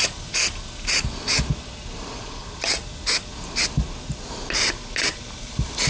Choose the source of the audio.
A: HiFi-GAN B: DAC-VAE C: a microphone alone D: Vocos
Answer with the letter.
C